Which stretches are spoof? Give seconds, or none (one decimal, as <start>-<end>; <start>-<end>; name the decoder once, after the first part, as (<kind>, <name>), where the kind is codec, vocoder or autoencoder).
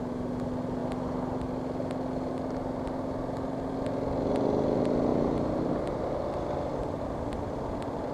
5.1-6.2 (vocoder, BigVGAN v2)